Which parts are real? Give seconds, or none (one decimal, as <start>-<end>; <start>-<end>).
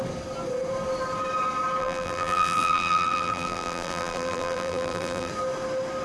0.0-1.8; 5.3-6.0